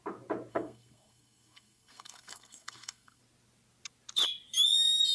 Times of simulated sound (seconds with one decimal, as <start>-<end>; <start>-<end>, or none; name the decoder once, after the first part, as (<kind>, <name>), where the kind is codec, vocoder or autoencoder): 0.5-3.2 (codec, SNAC)